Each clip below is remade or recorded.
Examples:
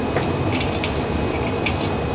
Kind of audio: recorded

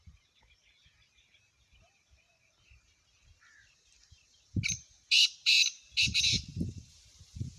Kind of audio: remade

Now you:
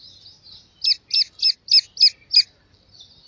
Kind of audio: recorded